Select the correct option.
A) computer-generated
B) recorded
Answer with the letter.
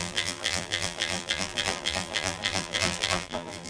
A